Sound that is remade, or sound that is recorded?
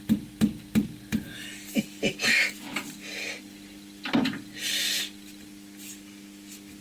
recorded